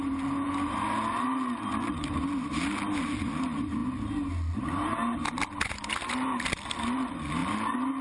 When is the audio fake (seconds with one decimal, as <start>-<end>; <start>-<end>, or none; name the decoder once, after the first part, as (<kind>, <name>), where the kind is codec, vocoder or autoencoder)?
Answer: none